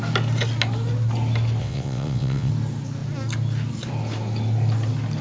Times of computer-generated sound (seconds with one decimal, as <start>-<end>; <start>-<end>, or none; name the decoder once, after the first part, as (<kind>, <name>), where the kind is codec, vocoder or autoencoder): 1.6-2.5 (vocoder, WaveNeXt)